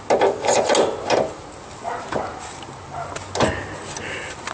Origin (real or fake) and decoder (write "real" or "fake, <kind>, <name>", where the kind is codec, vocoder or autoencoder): real